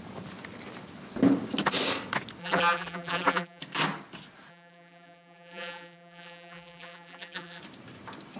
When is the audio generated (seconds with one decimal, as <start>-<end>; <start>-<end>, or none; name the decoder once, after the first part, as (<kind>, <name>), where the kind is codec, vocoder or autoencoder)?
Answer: 2.4-3.6 (vocoder, BigVGAN v2); 4.5-7.6